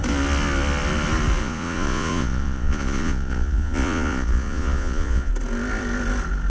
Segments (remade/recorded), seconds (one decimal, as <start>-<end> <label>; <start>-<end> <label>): 0.0-1.4 recorded; 1.4-5.3 remade; 5.3-6.5 recorded